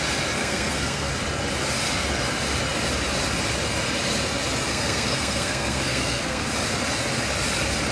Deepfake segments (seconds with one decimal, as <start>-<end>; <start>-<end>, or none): 0.4-1.1; 4.7-6.5